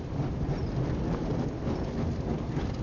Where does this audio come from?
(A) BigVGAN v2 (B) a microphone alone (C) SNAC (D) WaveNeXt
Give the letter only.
B